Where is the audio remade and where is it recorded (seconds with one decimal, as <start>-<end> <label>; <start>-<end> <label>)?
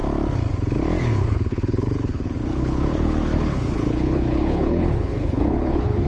0.0-1.0 recorded; 1.0-6.1 remade